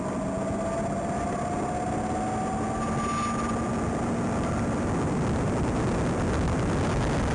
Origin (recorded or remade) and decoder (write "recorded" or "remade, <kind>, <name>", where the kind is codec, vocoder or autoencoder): recorded